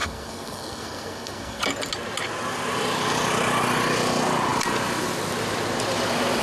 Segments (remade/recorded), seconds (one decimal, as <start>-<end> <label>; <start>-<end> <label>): 0.0-1.6 remade; 1.6-6.4 recorded